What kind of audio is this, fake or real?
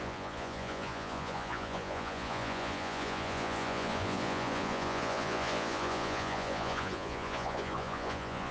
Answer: fake